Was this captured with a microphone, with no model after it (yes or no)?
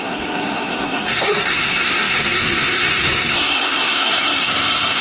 no